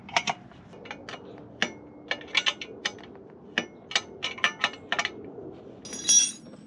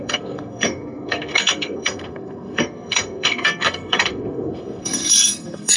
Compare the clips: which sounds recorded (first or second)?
first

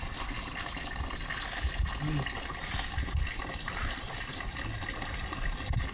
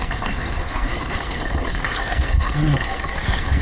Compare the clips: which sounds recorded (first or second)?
first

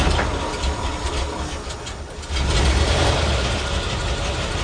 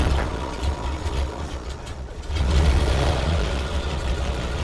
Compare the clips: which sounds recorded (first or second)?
first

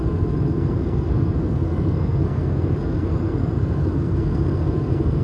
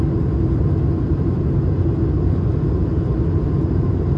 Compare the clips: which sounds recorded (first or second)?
second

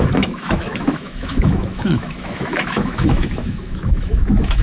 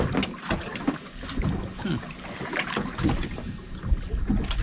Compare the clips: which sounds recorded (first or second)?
second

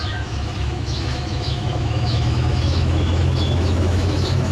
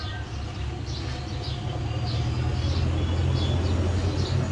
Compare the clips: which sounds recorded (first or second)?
second